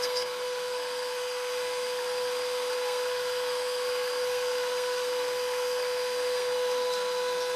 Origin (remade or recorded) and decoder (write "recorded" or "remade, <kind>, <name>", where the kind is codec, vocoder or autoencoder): remade, codec, SNAC